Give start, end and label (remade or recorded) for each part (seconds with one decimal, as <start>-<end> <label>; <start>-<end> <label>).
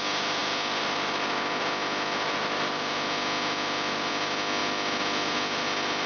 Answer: 0.0-6.1 recorded